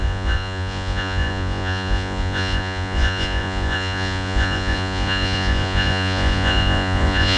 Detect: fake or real fake